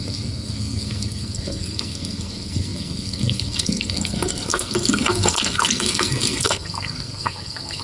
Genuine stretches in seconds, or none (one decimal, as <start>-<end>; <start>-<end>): none

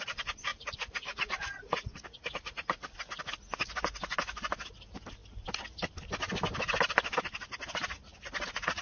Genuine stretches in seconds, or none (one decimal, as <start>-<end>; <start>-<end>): 0.0-0.5; 3.2-8.1

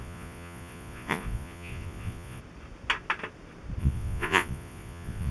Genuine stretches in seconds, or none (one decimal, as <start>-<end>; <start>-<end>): 2.4-3.8

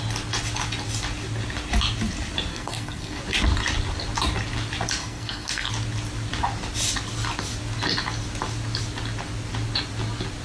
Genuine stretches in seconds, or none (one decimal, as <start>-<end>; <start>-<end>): 0.0-2.5; 3.2-5.0; 5.7-10.4

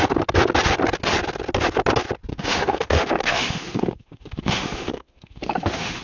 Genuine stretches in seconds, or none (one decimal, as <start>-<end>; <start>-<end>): 0.0-2.3

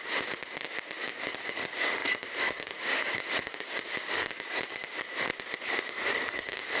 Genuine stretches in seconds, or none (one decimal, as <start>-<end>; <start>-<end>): 5.3-5.8

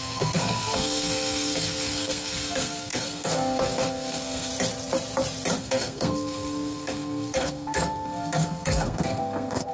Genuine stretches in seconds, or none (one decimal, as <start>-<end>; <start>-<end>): 4.5-5.6

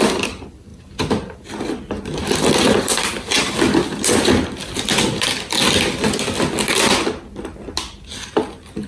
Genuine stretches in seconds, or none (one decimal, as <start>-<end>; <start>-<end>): 0.0-8.9